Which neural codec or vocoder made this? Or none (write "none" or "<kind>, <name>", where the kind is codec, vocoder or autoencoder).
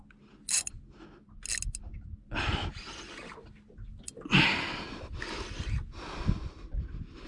none